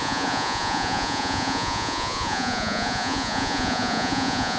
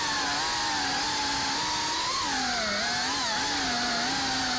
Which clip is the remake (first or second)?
first